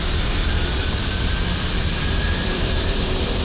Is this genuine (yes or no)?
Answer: no